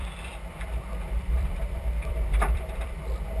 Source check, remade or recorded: remade